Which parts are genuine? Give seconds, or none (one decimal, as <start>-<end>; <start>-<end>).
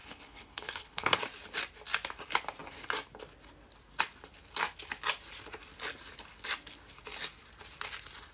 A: 1.2-8.3